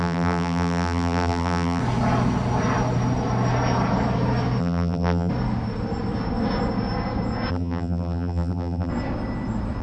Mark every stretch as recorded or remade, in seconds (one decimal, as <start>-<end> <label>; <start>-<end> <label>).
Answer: 0.0-1.8 remade; 1.8-4.6 recorded; 4.6-5.3 remade; 5.3-7.5 recorded; 7.5-8.9 remade; 8.9-9.8 recorded